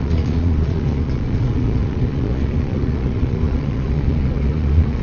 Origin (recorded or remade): remade